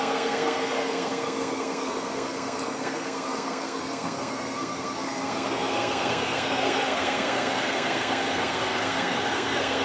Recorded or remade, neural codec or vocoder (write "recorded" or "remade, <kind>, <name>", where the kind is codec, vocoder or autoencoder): remade, codec, SNAC